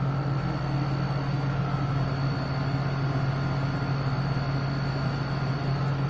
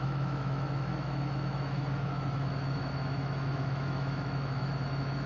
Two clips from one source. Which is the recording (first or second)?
first